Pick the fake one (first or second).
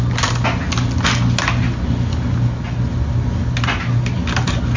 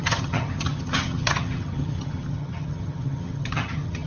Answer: second